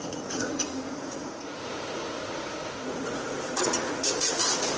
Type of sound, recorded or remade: remade